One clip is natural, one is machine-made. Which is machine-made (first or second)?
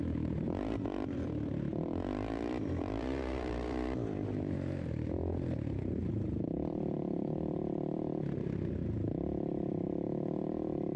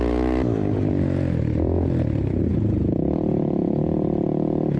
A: first